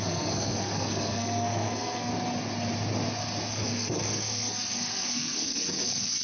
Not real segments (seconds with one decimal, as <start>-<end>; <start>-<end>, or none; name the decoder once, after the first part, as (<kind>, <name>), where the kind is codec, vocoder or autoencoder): 0.0-2.1 (codec, SNAC); 3.5-6.2